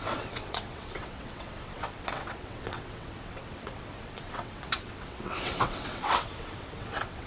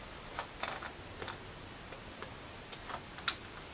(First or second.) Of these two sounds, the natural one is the second